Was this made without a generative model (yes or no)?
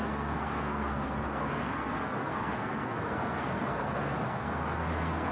no